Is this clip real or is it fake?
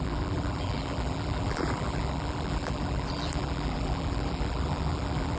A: fake